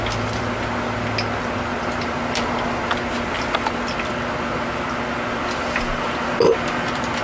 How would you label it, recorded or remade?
recorded